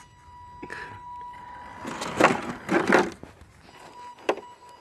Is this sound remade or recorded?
recorded